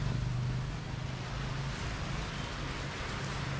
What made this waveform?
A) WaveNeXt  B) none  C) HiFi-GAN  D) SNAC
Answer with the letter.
B